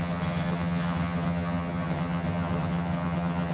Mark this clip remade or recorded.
remade